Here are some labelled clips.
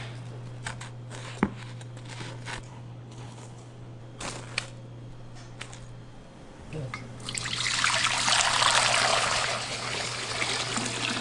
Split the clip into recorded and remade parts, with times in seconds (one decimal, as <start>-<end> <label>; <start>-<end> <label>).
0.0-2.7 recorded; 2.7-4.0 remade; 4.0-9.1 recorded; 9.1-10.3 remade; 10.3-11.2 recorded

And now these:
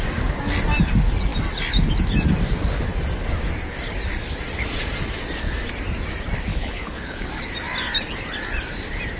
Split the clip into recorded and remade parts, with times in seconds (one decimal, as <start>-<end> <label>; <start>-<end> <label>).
0.0-6.5 recorded; 6.5-7.3 remade; 7.3-9.2 recorded

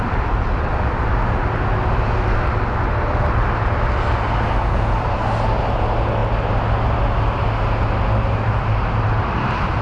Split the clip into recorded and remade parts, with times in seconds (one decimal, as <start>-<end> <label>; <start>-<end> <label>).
0.0-9.8 recorded